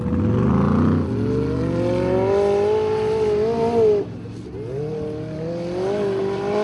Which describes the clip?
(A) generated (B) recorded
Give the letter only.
B